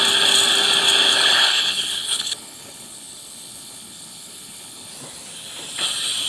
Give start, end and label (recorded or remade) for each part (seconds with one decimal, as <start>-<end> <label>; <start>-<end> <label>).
0.0-1.1 recorded; 1.1-4.9 remade; 4.9-6.3 recorded